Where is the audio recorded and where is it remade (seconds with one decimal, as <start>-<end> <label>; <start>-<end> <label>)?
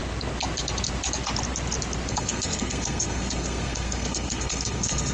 0.0-2.1 recorded; 2.1-5.1 remade